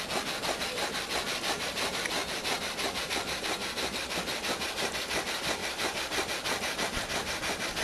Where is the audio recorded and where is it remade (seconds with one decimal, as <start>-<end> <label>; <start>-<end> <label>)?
0.0-7.8 recorded